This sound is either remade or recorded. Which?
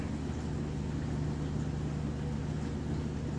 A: recorded